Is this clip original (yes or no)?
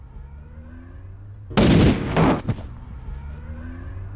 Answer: yes